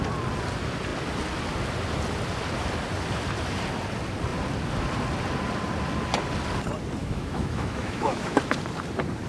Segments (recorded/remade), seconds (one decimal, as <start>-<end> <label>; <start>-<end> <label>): 0.0-7.0 recorded; 7.0-8.4 remade; 8.4-9.3 recorded

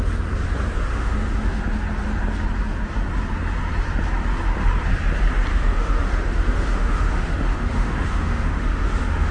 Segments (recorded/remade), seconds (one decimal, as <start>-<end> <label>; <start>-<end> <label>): 0.0-0.9 recorded; 0.9-1.6 remade; 1.6-5.5 recorded; 5.5-9.3 remade

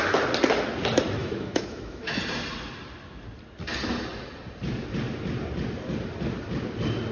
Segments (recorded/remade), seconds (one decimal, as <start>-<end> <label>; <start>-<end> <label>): 0.0-1.2 recorded; 1.2-2.2 remade; 2.2-7.1 recorded

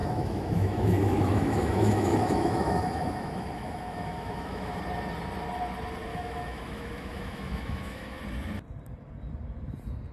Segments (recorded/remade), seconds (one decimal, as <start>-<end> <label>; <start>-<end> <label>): 0.0-4.8 remade; 4.8-6.1 recorded; 6.1-8.2 remade; 8.2-10.1 recorded

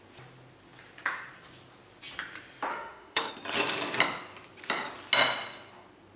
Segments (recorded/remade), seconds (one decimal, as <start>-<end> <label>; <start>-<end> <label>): 0.0-2.7 recorded; 2.7-3.3 remade; 3.3-6.2 recorded

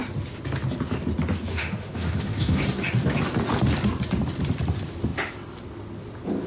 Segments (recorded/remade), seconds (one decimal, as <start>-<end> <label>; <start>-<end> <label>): 0.0-1.5 recorded; 1.5-2.6 remade; 2.6-6.5 recorded

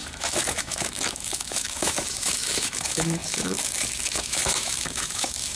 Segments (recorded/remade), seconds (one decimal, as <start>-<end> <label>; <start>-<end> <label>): 0.0-5.6 remade

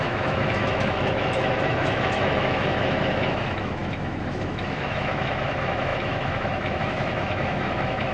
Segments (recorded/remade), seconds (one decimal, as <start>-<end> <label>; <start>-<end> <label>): 0.0-8.1 remade